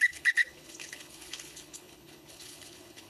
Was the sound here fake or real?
fake